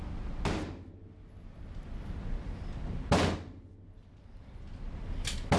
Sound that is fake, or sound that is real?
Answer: real